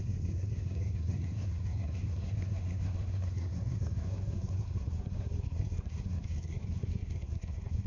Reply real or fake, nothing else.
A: fake